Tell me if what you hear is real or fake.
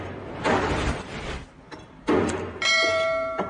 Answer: fake